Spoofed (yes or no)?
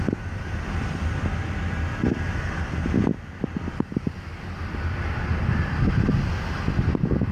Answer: no